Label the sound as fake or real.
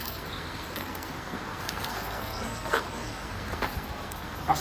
fake